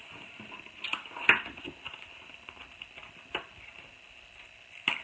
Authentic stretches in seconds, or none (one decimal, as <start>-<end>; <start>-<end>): 0.0-5.0